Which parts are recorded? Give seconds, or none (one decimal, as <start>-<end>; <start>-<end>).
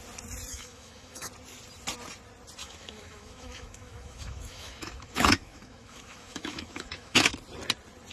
0.0-0.5; 1.3-2.6; 7.3-8.1